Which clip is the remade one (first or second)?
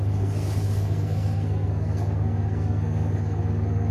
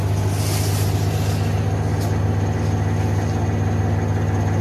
first